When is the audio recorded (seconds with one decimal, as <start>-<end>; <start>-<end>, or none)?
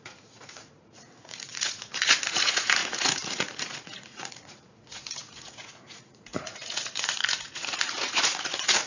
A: none